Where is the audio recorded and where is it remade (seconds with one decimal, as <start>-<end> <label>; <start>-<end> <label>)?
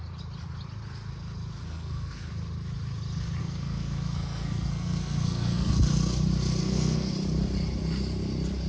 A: 0.0-1.6 recorded; 1.6-2.3 remade; 2.3-3.4 recorded; 3.4-5.7 remade; 5.7-6.6 recorded; 6.6-7.1 remade; 7.1-8.7 recorded